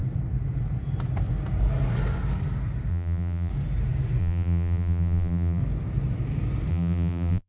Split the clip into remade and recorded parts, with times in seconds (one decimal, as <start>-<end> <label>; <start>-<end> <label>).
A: 0.0-2.9 recorded; 2.9-3.5 remade; 3.5-4.2 recorded; 4.2-5.6 remade; 5.6-6.7 recorded; 6.7-7.5 remade